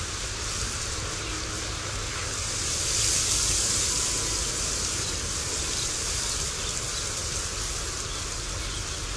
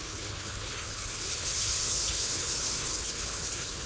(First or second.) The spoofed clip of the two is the second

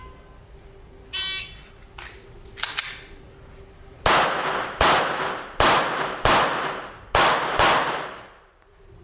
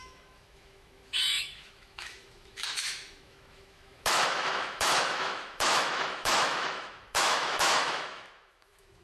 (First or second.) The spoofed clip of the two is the second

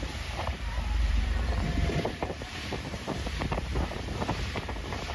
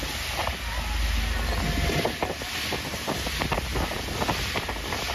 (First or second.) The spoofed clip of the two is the first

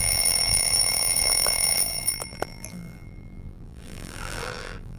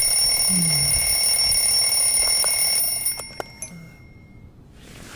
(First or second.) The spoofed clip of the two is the first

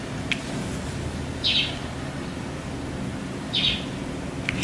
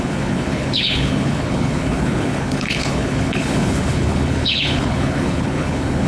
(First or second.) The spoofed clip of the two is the second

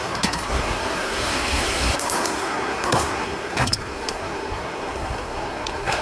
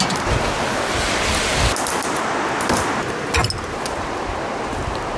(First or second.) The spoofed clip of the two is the first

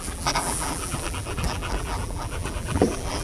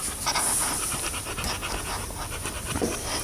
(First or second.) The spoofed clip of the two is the first